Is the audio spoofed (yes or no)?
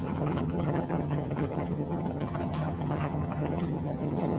yes